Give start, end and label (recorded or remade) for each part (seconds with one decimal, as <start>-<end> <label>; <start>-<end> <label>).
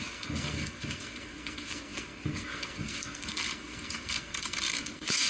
0.0-5.3 remade